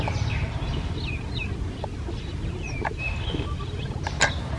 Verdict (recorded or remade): recorded